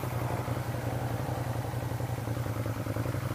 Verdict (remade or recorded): remade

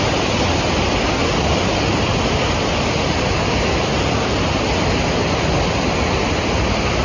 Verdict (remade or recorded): recorded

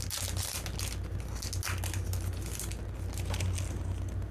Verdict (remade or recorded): recorded